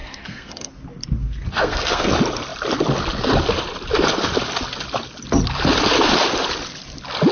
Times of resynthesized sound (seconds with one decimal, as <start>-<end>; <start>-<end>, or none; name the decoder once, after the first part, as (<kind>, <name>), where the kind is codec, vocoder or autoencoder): 0.0-0.7 (codec, SNAC); 1.2-2.1